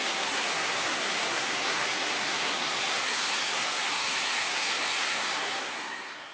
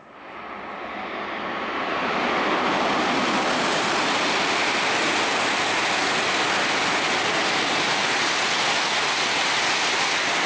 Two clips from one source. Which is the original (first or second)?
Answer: second